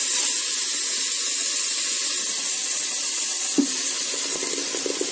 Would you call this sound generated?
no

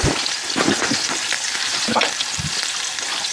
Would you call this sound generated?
no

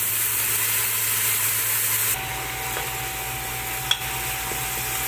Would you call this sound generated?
no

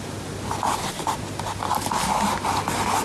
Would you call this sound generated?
no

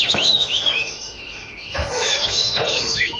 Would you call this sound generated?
yes